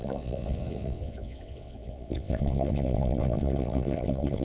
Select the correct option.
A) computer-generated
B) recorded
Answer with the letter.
A